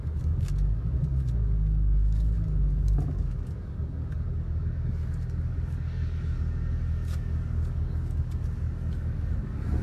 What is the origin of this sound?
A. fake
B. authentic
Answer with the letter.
A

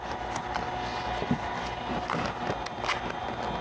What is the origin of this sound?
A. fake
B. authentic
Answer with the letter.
B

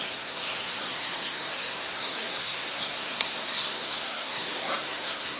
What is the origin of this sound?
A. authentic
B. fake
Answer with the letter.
B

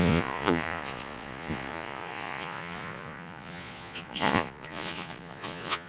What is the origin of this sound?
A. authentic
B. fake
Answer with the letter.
B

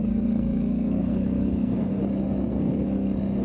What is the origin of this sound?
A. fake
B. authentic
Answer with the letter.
A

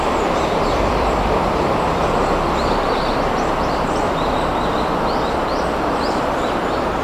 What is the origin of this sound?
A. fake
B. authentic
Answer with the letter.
A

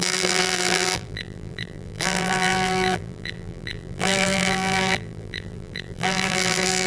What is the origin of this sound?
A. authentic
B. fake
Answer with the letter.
B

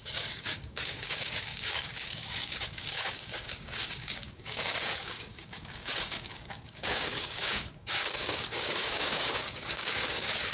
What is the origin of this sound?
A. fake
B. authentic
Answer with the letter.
A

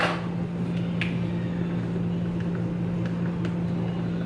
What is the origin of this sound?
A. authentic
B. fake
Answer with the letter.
A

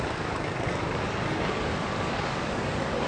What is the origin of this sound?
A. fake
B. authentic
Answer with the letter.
A